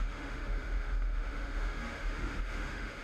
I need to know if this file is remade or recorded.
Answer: remade